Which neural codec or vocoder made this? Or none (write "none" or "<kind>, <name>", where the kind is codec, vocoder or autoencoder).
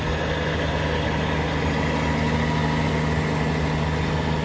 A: none